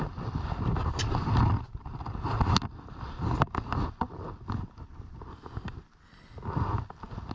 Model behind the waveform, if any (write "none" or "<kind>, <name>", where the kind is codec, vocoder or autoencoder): none